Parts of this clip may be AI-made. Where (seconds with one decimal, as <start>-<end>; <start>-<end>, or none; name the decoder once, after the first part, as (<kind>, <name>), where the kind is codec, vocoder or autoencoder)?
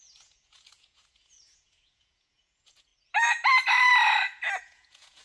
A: 0.0-2.9 (vocoder, Vocos); 4.6-5.2